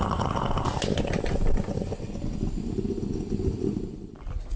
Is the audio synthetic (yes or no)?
no